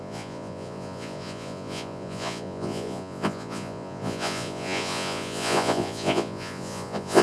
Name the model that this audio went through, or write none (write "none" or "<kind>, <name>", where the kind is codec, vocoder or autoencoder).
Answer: vocoder, Vocos